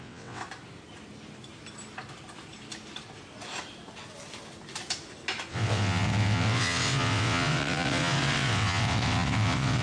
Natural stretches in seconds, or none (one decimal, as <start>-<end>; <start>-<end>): 0.4-5.5